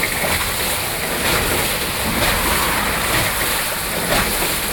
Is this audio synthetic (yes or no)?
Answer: no